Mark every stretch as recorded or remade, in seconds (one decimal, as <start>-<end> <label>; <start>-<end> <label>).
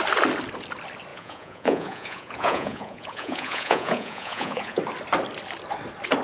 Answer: 0.0-1.1 recorded; 1.1-4.8 remade; 4.8-6.2 recorded